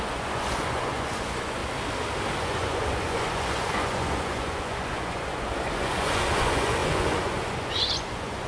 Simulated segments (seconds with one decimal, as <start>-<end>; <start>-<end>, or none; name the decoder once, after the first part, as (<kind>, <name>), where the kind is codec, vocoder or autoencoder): 0.0-1.6 (vocoder, Vocos); 2.4-8.5